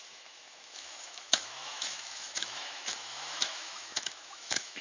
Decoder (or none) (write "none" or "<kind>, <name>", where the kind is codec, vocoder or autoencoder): autoencoder, DAC-VAE